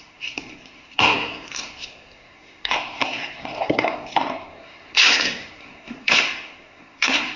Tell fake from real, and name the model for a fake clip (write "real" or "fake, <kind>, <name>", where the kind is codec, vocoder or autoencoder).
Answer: fake, codec, SNAC